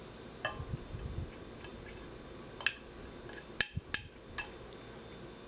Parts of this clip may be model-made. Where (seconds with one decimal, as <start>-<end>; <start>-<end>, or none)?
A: none